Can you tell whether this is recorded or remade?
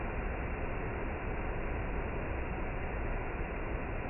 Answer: recorded